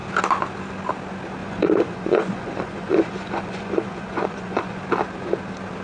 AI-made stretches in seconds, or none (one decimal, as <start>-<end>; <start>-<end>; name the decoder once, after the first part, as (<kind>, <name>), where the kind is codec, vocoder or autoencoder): 1.4-4.8 (vocoder, Vocos)